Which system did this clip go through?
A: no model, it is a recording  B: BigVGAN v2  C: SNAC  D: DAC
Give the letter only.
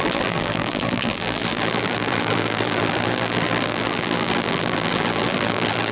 B